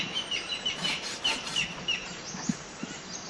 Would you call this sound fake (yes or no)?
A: yes